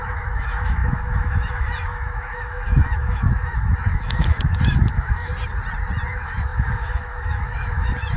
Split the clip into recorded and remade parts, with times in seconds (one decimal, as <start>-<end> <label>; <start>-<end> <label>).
0.0-5.3 remade; 5.3-6.1 recorded; 6.1-8.2 remade